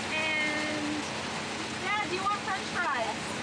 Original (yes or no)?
yes